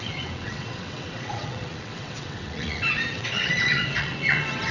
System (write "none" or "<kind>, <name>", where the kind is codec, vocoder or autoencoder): vocoder, WaveNeXt